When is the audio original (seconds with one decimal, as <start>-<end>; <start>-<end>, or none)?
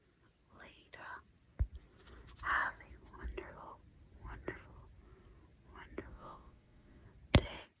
0.0-6.1; 7.0-7.8